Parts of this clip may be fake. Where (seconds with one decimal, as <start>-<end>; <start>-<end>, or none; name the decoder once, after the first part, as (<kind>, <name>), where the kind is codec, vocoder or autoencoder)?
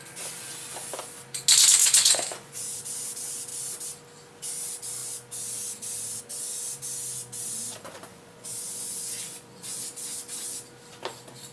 1.8-2.8 (vocoder, Vocos); 8.1-9.8